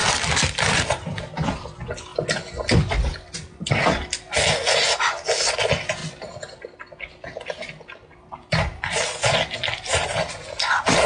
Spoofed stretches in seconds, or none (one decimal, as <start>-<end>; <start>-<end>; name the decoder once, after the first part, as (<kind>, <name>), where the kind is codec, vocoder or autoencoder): none